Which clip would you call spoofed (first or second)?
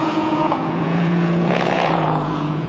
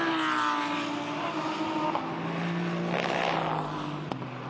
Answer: first